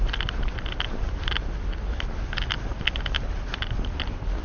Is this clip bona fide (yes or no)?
yes